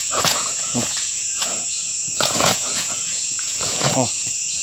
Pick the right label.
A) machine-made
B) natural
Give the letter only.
A